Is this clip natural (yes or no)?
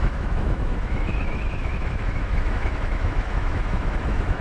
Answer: no